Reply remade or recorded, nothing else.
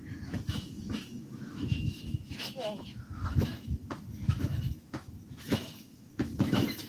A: remade